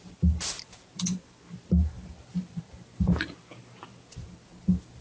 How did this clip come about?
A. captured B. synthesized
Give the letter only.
A